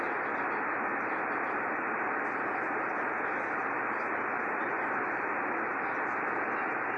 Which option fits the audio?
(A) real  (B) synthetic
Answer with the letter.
A